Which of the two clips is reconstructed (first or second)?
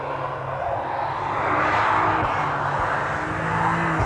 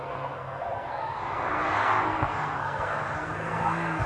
second